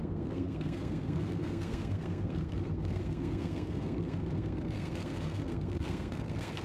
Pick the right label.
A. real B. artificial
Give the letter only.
B